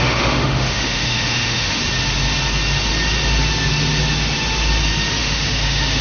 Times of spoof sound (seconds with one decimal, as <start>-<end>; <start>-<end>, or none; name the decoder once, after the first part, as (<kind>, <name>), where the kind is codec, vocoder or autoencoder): 0.0-1.8 (autoencoder, DAC-VAE); 5.2-6.0